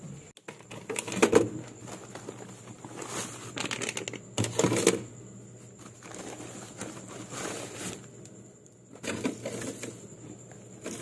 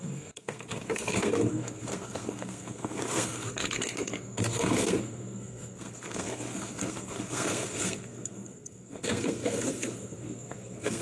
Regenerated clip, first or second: second